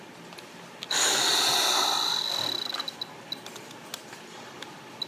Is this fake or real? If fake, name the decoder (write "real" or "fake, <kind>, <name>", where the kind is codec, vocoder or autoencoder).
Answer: real